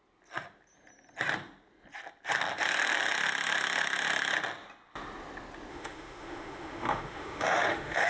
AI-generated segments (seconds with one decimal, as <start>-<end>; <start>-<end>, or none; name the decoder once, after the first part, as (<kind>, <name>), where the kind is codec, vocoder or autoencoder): 5.7-8.1 (autoencoder, DAC-VAE)

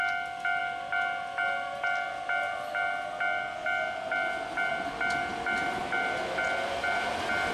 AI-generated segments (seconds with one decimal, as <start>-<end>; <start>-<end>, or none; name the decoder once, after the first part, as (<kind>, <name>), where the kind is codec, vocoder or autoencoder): none

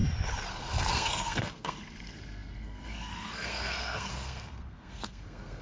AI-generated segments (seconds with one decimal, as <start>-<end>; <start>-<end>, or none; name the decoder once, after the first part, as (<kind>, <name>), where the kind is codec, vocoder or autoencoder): 0.5-5.6 (codec, SNAC)

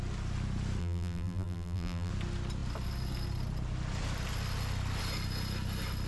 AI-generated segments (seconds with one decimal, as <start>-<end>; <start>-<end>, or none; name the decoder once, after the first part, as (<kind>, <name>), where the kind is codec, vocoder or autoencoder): 0.8-2.1 (vocoder, BigVGAN v2)